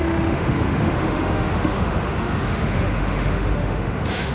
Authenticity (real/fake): fake